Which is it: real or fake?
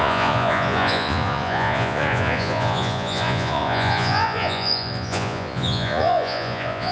fake